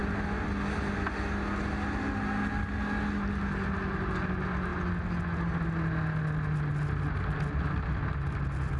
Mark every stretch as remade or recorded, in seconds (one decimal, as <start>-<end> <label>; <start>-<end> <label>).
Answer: 0.0-8.8 recorded